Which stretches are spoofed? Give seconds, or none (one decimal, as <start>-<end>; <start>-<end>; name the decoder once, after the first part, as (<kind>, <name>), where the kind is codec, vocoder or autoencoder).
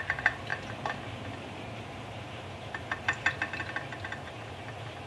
none